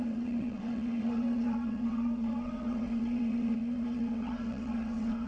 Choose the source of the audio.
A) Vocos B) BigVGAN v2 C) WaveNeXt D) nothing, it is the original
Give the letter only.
C